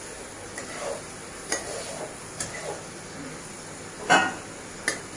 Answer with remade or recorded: recorded